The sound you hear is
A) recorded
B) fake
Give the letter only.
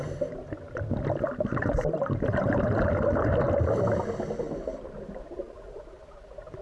A